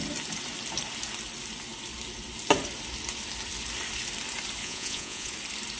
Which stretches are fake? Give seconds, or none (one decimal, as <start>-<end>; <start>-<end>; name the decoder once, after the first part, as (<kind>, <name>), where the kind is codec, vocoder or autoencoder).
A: 4.6-5.3 (vocoder, Vocos)